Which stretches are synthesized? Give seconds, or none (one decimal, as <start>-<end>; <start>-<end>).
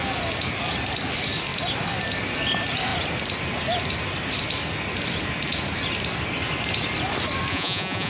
7.5-8.1